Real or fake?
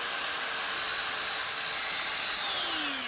real